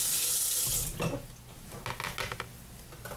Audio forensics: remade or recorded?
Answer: recorded